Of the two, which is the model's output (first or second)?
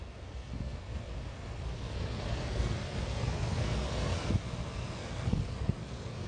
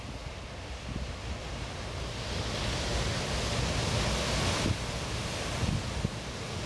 first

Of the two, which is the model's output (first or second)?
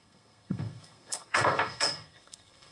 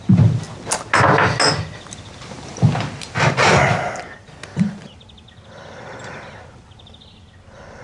first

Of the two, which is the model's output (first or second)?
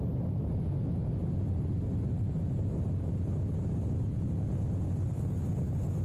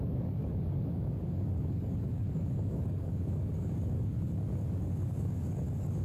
second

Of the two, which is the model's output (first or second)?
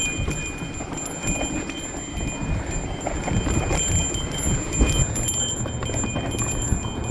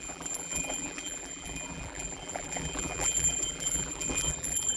second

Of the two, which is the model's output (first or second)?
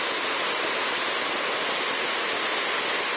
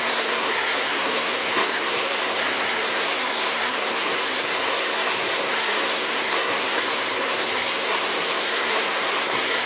second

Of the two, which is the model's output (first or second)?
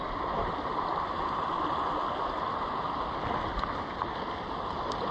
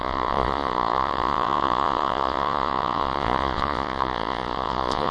second